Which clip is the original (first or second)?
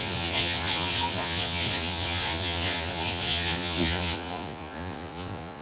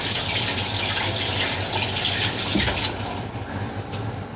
second